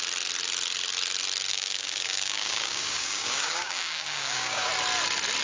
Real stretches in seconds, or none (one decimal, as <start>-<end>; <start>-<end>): 0.0-1.5; 4.7-5.4